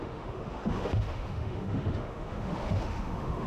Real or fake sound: fake